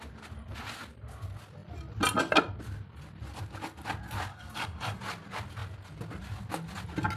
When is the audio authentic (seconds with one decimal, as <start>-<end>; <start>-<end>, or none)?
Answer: 0.0-4.3; 5.0-7.2